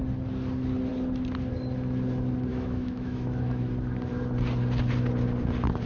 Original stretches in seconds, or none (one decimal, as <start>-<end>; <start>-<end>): 0.0-2.5; 3.7-5.9